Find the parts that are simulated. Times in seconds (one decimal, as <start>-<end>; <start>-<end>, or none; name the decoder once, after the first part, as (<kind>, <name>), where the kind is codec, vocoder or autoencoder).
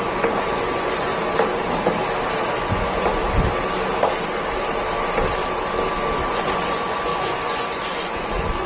0.0-1.1 (vocoder, Vocos); 2.6-3.2; 6.3-8.7